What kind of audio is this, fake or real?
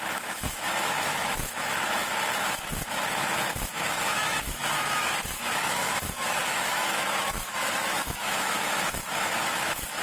fake